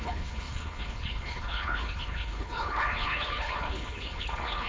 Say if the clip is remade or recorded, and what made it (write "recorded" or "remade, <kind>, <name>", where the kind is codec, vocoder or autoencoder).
remade, codec, HILCodec